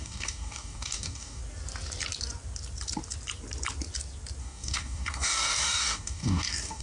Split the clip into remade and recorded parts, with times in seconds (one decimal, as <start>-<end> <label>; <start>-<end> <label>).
0.0-1.4 remade; 1.4-4.4 recorded; 4.4-6.8 remade